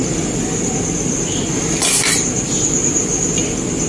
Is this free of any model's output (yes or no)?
yes